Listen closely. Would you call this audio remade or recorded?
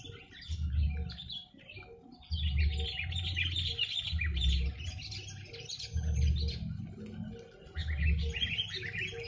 recorded